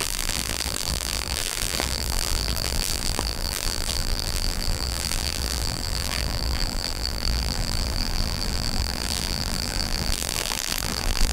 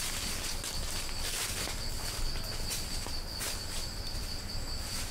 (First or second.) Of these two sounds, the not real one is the first